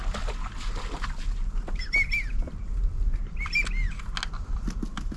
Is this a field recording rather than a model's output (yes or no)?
yes